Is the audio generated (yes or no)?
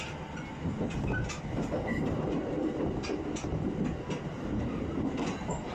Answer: no